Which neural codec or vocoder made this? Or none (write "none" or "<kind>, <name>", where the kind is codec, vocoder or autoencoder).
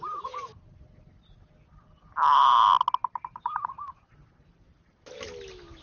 none